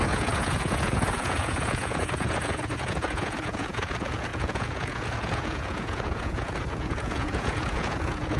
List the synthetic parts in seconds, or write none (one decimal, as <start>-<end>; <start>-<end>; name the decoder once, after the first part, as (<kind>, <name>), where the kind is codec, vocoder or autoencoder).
0.0-8.4 (vocoder, Vocos)